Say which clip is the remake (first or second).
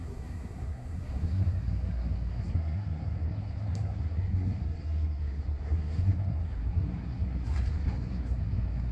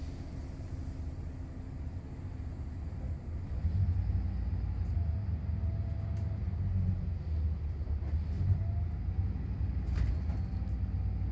first